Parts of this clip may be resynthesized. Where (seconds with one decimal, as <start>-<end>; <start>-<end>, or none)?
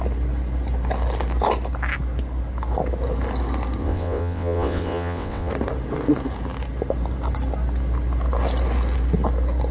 3.8-5.5